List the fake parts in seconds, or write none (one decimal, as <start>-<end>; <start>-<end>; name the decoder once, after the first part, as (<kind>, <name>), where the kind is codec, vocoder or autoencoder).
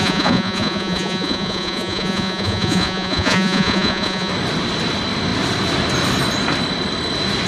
0.0-4.3 (vocoder, Vocos)